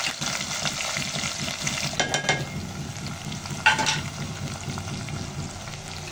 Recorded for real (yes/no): yes